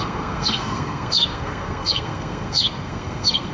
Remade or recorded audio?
remade